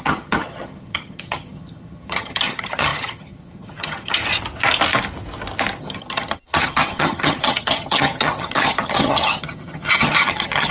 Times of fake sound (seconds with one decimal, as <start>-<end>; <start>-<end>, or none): 0.0-4.2; 5.8-10.7